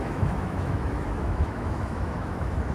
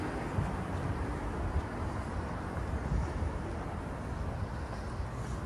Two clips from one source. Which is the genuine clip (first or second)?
second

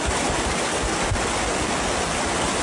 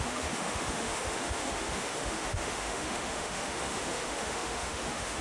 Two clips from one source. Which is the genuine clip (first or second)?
first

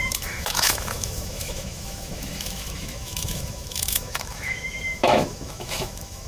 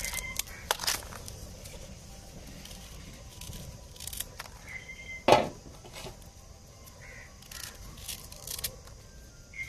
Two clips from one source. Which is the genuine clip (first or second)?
second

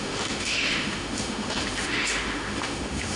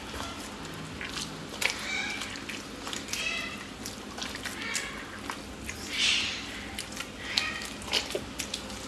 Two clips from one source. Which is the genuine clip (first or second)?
second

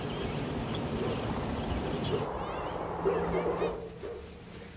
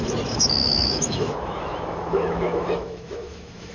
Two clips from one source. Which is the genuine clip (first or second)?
first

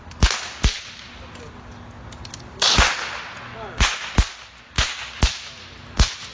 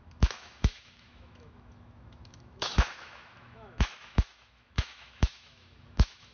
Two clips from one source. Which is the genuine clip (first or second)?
first